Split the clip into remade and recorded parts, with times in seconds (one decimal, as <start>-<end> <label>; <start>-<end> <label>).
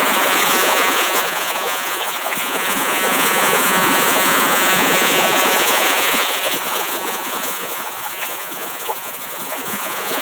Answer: 0.0-10.2 remade